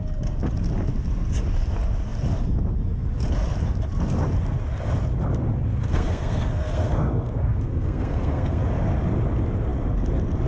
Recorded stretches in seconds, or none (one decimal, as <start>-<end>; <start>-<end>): 0.0-5.9; 8.6-10.5